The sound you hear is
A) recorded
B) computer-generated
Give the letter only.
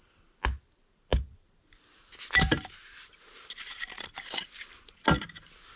A